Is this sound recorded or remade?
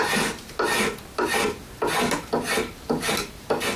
recorded